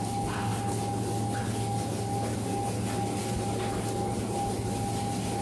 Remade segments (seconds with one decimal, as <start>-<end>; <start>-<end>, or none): none